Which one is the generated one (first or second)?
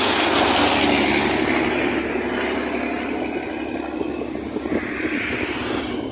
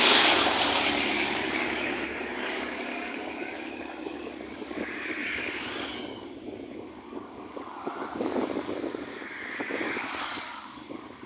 second